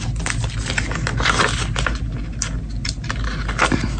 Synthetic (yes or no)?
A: no